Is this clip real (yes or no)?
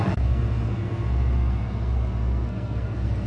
no